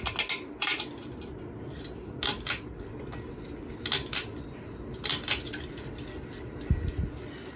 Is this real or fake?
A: real